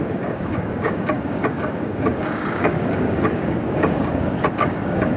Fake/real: fake